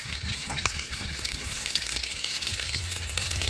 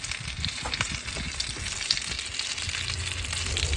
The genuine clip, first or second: second